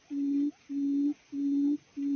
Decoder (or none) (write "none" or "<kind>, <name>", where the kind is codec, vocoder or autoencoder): none